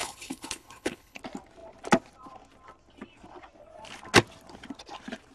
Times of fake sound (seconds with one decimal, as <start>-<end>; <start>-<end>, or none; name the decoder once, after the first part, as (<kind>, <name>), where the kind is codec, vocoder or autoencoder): 0.0-1.2 (codec, HILCodec)